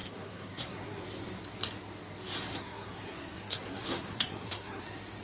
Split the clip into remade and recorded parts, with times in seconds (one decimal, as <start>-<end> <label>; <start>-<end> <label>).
0.0-1.0 remade; 1.0-2.5 recorded; 2.5-4.8 remade; 4.8-5.2 recorded